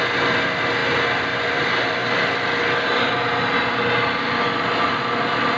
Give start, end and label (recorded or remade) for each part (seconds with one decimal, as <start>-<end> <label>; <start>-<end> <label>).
0.0-5.6 recorded

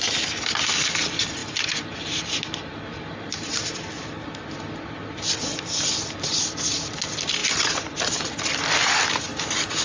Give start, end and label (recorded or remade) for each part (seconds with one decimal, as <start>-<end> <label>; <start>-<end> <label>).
0.0-9.8 recorded

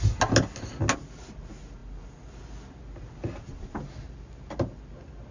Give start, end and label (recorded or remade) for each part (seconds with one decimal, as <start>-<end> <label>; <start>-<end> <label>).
0.0-5.3 recorded

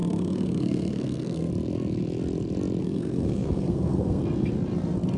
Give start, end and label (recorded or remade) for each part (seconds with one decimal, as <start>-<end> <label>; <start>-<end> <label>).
0.0-1.5 remade; 1.5-2.8 recorded; 2.8-4.2 remade; 4.2-5.2 recorded

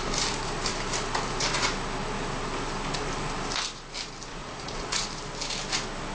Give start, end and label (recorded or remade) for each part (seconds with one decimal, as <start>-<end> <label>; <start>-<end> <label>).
0.0-4.3 recorded; 4.3-5.0 remade; 5.0-6.1 recorded